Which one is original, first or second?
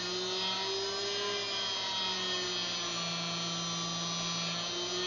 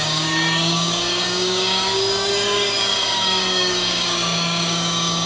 first